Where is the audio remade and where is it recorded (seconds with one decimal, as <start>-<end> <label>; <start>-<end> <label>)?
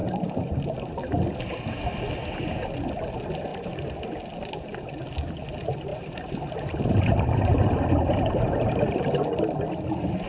0.0-0.9 remade; 0.9-5.9 recorded; 5.9-9.0 remade; 9.0-10.3 recorded